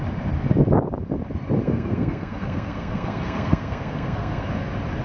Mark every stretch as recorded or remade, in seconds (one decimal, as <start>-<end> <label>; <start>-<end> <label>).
0.0-1.6 recorded; 1.6-4.5 remade; 4.5-5.0 recorded